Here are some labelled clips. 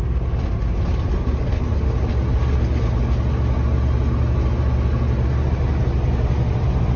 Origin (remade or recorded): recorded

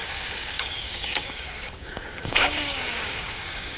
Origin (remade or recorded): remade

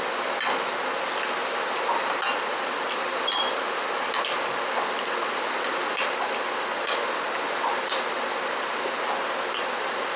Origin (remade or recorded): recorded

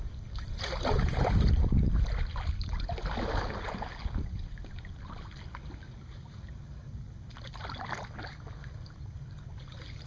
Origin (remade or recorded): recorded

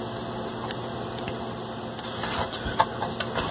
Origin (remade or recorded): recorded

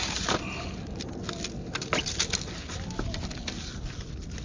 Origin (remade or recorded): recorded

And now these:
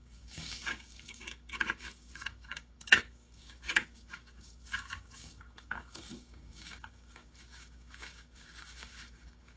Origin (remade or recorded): remade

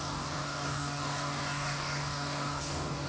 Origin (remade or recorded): remade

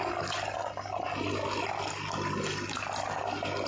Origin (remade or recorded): recorded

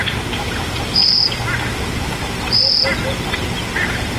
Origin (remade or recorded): recorded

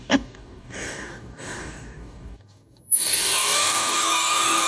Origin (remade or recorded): remade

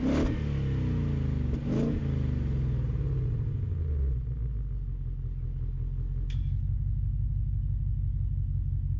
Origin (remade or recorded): recorded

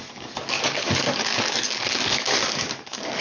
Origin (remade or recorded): remade